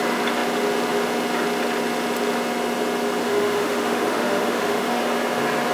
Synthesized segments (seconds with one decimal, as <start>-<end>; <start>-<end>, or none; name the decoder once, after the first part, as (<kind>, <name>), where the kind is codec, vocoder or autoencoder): 3.2-5.0 (autoencoder, DAC-VAE)